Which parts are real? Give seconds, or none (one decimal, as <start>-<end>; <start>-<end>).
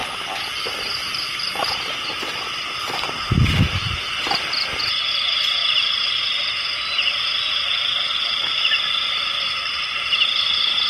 0.0-10.9